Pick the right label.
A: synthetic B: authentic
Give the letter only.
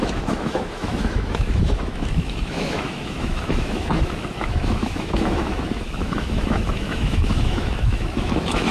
A